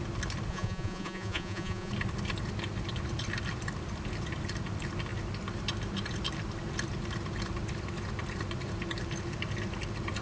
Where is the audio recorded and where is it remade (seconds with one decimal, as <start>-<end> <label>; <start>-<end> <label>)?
0.0-0.5 recorded; 0.5-1.9 remade; 1.9-10.2 recorded